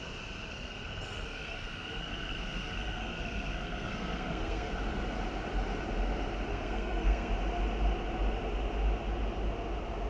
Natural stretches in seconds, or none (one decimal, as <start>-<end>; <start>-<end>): 0.0-0.5; 4.7-6.5; 7.3-10.1